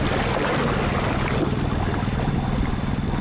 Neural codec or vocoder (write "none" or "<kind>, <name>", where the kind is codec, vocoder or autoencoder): none